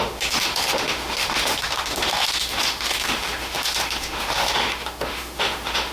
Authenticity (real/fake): fake